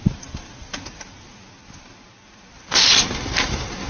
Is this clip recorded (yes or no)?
yes